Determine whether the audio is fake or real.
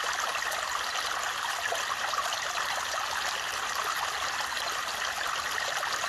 real